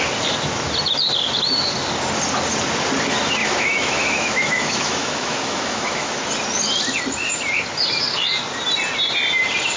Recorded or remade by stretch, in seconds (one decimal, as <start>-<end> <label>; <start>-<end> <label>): 0.0-3.4 recorded; 3.4-6.1 remade; 6.1-9.8 recorded